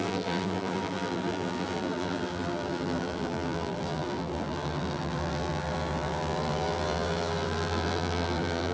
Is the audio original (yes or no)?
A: no